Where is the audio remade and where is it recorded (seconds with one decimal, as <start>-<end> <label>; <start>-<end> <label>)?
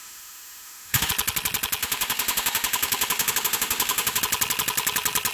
0.0-1.1 remade; 1.1-1.8 recorded; 1.8-4.2 remade; 4.2-5.3 recorded